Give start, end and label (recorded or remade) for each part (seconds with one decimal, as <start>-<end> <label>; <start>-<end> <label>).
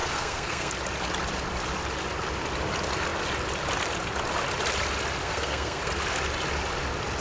0.0-0.7 remade; 0.7-5.2 recorded; 5.2-5.9 remade; 5.9-7.2 recorded